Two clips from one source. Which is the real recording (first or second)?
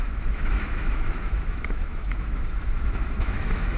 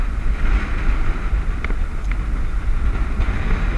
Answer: second